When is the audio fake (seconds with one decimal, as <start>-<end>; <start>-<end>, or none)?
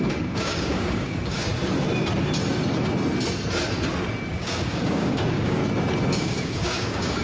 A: 0.0-1.5; 4.3-5.6; 6.1-7.2